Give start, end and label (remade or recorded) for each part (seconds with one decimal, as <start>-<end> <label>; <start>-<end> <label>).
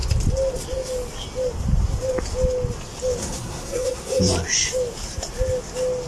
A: 0.0-3.2 recorded; 3.2-4.2 remade; 4.2-6.1 recorded